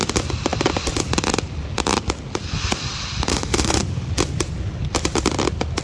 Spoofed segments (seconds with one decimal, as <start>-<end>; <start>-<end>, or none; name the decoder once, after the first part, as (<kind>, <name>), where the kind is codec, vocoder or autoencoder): 3.3-3.8 (autoencoder, DAC-VAE)

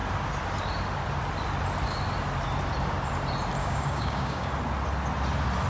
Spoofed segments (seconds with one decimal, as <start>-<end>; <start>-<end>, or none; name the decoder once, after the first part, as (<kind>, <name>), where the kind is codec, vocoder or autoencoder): 3.6-4.5 (codec, DAC)

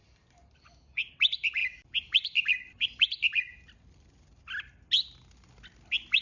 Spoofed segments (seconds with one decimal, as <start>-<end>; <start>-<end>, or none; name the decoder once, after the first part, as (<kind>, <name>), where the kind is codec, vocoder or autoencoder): 0.0-1.1 (vocoder, BigVGAN v2); 1.6-4.4

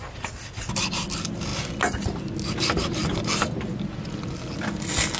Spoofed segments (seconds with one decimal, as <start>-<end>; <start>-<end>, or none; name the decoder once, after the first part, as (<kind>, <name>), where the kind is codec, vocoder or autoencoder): none

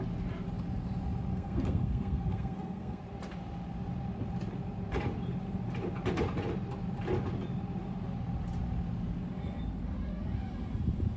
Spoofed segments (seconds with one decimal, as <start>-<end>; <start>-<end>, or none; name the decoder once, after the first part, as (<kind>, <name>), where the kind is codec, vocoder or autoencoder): 1.3-3.0 (codec, SNAC)

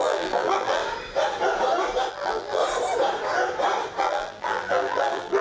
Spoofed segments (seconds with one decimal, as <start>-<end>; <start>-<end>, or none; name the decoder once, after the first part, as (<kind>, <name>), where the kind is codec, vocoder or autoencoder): 0.0-0.8 (vocoder, BigVGAN v2); 2.1-2.6; 4.0-5.4